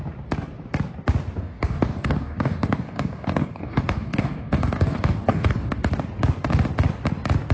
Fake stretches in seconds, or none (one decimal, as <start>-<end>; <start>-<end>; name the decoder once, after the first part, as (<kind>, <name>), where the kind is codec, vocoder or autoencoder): 1.4-5.9 (codec, DAC)